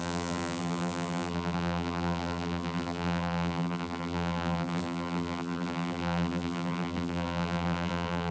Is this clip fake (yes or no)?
yes